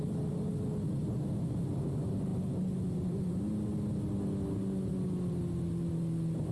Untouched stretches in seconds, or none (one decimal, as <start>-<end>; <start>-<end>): 0.0-6.5